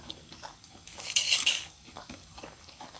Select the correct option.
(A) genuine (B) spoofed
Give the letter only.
B